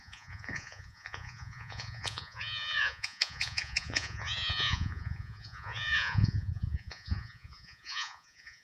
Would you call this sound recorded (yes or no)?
no